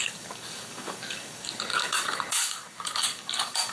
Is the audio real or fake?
fake